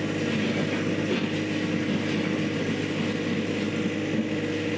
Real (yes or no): yes